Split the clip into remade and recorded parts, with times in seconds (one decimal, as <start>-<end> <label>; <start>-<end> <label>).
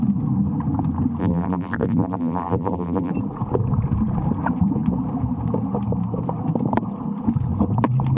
0.0-1.2 recorded; 1.2-3.1 remade; 3.1-8.2 recorded